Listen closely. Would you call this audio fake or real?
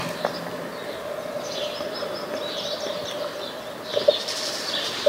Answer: real